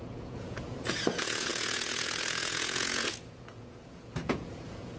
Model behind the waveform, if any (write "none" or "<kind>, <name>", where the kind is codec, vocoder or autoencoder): vocoder, Vocos